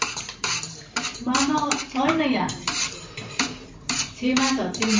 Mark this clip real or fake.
fake